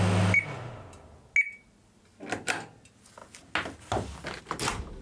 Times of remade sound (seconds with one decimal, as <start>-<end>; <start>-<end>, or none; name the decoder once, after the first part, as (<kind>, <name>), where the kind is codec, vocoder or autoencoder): none